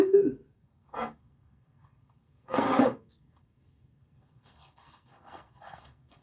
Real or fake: fake